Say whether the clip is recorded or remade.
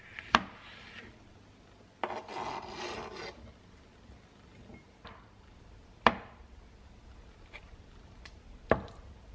recorded